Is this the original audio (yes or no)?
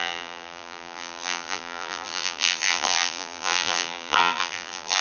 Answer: no